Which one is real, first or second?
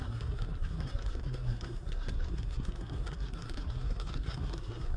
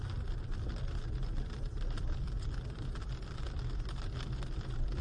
second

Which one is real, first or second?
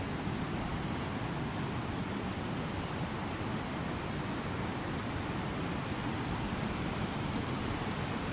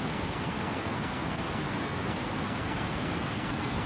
first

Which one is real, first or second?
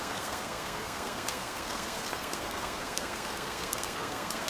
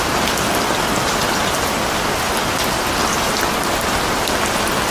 second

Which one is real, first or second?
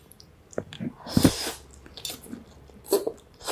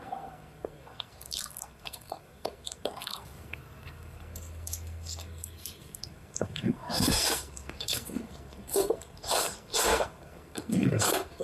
first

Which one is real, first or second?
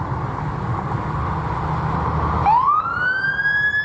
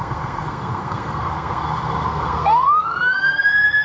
first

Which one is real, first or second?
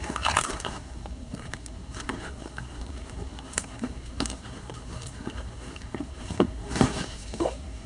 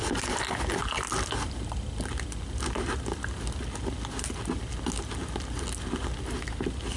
second